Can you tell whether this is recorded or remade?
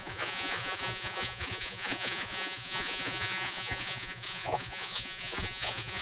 remade